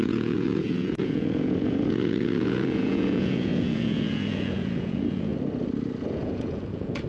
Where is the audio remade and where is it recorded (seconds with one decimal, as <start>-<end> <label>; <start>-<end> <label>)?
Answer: 0.0-5.3 remade; 5.3-6.0 recorded; 6.0-7.1 remade